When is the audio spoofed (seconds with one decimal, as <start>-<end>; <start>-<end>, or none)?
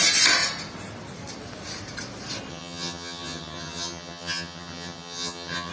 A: 2.5-5.7